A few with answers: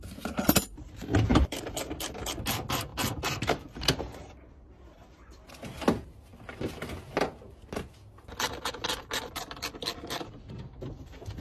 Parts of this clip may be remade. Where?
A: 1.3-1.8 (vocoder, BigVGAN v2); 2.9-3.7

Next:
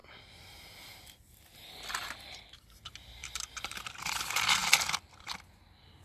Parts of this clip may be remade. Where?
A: 3.2-3.8 (vocoder, BigVGAN v2)

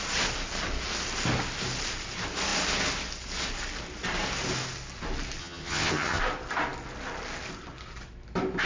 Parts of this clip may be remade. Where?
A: 5.4-6.2 (vocoder, HiFi-GAN)

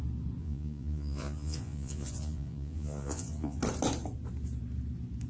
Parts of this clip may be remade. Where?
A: 0.4-3.6 (vocoder, Vocos)

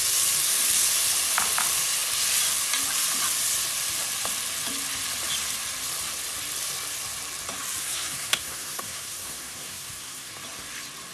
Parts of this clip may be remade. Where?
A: 7.8-10.3 (codec, SNAC)

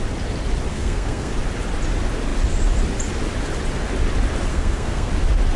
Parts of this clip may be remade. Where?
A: 0.7-1.3 (codec, SNAC); 4.5-5.1